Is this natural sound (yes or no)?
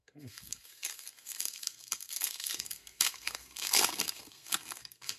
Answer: no